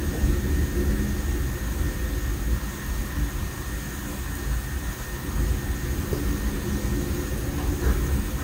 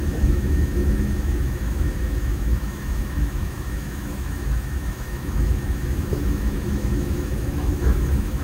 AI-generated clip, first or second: second